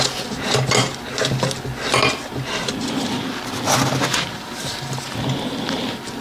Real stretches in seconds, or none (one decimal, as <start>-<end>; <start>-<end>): 0.0-4.1; 5.0-6.2